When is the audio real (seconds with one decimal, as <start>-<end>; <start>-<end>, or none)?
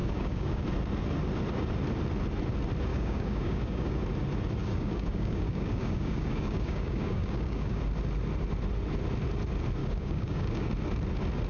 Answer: 0.6-2.9; 4.0-4.6; 7.8-9.8; 10.7-11.5